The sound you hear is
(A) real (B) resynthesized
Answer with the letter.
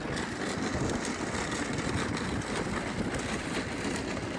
A